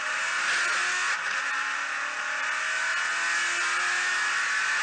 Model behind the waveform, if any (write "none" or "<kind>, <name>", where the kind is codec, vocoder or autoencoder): none